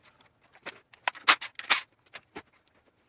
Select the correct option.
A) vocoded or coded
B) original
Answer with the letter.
B